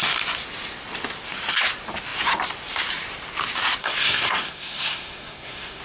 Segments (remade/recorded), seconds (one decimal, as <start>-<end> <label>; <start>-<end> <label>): 0.0-3.8 recorded; 3.8-5.8 remade